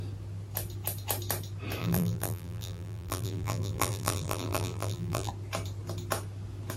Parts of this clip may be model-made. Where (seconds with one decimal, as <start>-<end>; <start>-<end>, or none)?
1.8-5.3